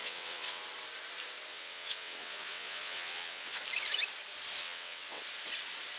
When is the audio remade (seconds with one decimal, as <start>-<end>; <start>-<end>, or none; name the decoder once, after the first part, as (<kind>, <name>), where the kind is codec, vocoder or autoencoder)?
0.0-0.6 (vocoder, WaveNeXt); 1.5-3.6; 4.6-5.2